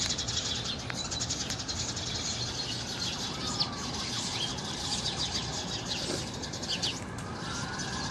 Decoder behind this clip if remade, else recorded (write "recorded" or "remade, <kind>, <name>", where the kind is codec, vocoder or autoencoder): recorded